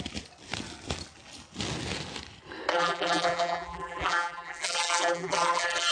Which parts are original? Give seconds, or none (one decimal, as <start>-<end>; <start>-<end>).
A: 0.0-2.7